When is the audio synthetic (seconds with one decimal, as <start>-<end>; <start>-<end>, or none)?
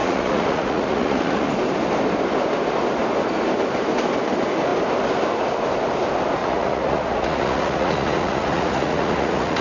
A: 0.0-1.5; 6.4-9.6